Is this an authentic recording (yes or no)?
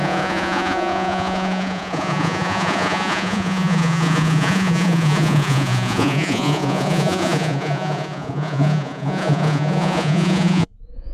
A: no